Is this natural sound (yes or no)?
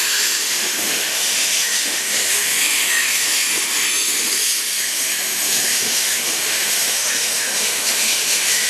no